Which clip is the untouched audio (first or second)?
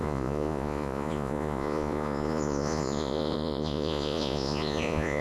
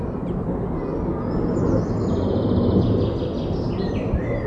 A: second